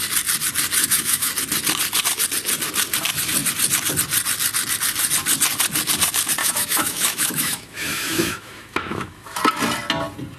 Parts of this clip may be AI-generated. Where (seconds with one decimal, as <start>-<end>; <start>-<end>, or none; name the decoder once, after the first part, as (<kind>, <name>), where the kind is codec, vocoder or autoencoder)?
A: 0.8-1.3 (autoencoder, DAC-VAE); 6.4-9.4